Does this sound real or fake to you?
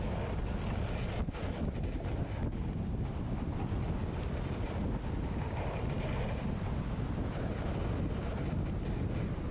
real